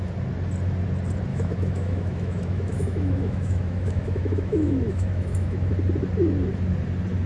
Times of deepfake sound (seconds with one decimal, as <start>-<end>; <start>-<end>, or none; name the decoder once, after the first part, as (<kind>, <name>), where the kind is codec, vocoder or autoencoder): 1.3-5.7 (autoencoder, DAC-VAE)